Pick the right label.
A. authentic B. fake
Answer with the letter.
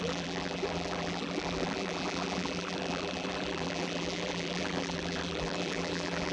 B